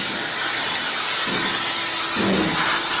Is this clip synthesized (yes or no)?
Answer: no